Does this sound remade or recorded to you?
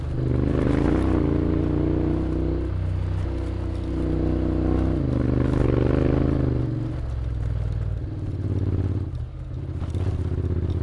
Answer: recorded